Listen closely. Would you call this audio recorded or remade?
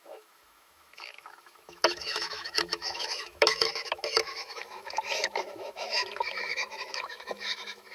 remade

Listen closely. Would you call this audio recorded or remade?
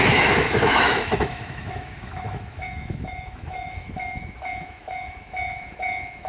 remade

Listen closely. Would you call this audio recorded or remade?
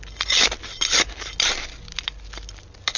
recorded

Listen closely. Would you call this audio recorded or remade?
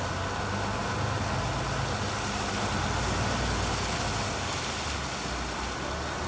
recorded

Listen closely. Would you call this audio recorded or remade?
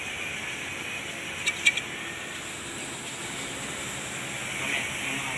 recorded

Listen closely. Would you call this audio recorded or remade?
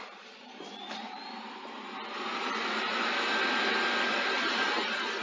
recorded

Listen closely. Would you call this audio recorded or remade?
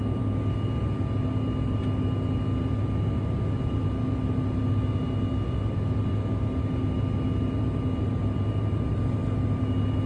recorded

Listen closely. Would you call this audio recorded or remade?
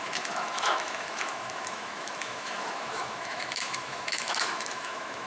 remade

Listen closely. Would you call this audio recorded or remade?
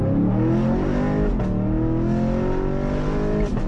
recorded